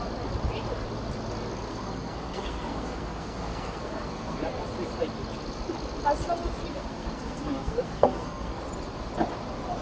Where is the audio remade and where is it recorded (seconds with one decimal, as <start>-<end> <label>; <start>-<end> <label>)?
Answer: 0.0-1.7 recorded; 1.7-4.4 remade; 4.4-6.7 recorded; 6.7-8.6 remade; 8.6-9.8 recorded